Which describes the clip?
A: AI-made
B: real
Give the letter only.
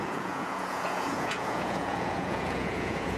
A